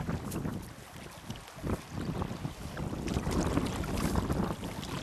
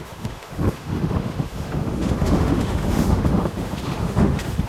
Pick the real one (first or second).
first